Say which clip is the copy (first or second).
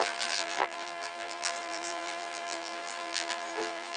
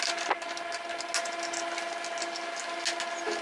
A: first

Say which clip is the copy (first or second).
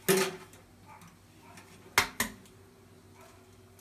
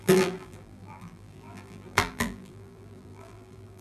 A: second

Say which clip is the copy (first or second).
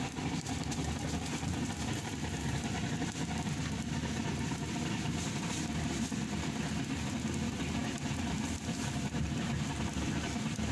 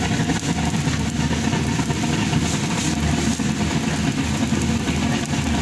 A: first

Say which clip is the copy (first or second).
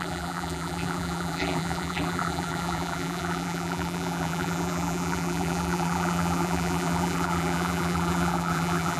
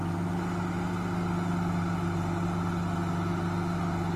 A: first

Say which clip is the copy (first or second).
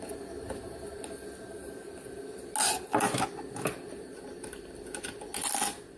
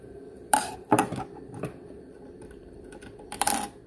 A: second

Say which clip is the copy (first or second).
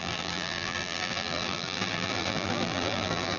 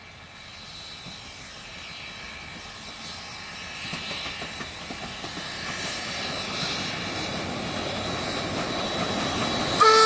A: first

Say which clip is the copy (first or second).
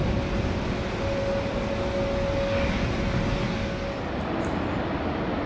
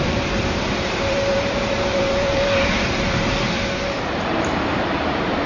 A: second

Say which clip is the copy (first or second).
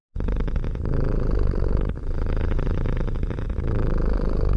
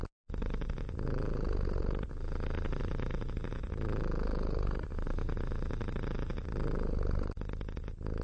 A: first